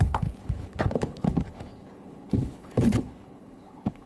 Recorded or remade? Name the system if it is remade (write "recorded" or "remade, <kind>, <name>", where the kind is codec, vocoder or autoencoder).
remade, codec, HILCodec